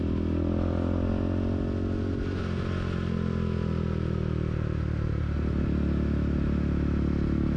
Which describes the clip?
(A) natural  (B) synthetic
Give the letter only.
A